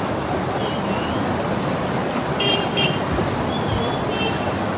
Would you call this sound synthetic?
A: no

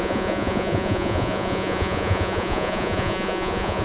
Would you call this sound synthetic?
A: yes